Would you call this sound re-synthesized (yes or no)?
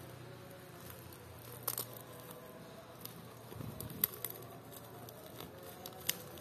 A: no